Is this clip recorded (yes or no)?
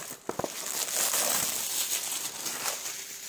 yes